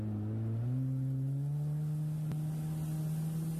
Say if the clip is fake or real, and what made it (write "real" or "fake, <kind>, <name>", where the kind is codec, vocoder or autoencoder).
real